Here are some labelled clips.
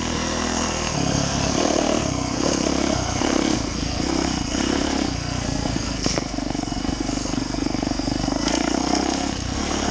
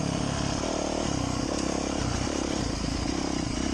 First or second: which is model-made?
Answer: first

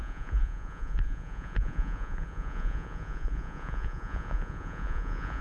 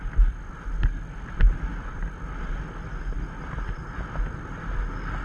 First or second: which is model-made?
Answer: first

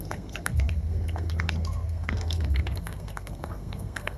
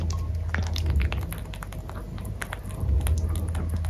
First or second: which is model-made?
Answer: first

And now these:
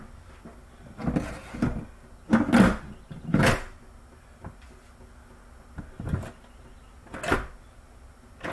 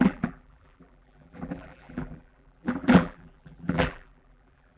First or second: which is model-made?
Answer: second